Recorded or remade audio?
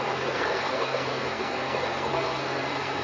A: remade